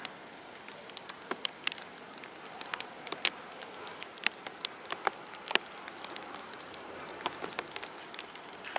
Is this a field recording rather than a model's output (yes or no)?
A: yes